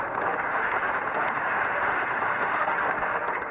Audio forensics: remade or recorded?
remade